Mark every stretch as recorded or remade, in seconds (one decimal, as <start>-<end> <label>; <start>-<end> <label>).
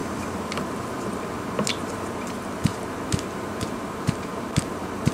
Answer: 0.0-2.7 recorded; 2.7-5.1 remade